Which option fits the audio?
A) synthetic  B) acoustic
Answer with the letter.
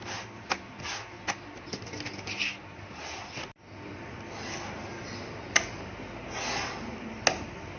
B